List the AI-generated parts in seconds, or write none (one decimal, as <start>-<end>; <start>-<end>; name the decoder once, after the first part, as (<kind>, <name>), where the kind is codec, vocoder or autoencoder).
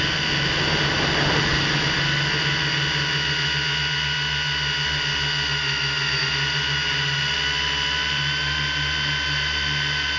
none